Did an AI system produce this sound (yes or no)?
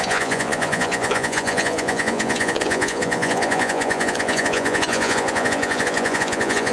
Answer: yes